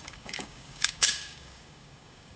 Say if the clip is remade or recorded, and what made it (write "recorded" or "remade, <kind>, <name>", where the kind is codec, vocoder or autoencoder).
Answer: remade, codec, DAC